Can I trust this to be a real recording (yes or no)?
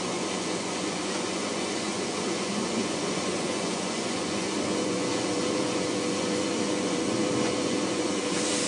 no